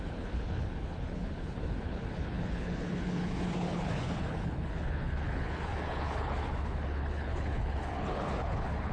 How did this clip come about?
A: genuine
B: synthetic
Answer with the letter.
B